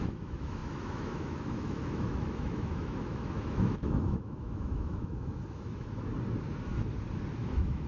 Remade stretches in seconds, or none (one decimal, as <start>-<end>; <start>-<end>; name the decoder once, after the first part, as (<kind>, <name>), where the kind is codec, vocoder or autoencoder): 0.0-6.1 (autoencoder, DAC-VAE); 7.4-7.9